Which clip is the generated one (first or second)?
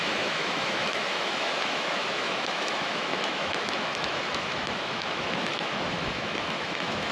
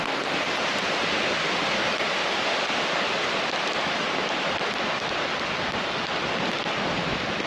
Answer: first